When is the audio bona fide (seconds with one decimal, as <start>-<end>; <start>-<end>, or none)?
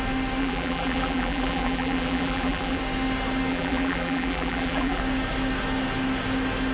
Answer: 0.0-0.4; 2.8-3.5; 5.0-6.7